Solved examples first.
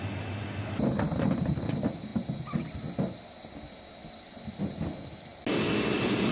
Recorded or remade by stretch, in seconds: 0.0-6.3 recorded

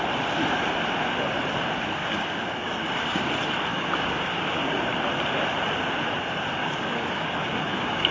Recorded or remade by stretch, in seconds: 0.0-2.0 recorded; 2.0-3.3 remade; 3.3-3.7 recorded; 3.7-4.9 remade; 4.9-6.6 recorded; 6.6-8.1 remade

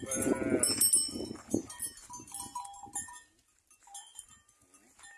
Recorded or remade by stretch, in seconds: 0.0-5.2 recorded

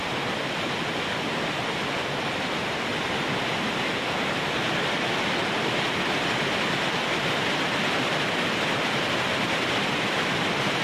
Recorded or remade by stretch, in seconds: 0.0-2.9 remade; 2.9-3.7 recorded; 3.7-10.8 remade

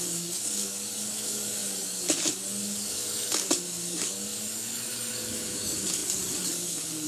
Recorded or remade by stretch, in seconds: 0.0-7.1 remade

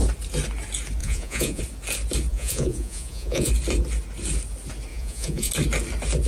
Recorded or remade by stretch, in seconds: 0.0-1.0 recorded; 1.0-1.6 remade; 1.6-2.3 recorded; 2.3-3.5 remade; 3.5-4.9 recorded; 4.9-5.5 remade; 5.5-6.3 recorded

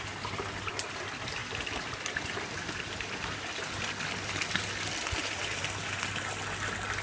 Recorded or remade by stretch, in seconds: 0.0-7.0 recorded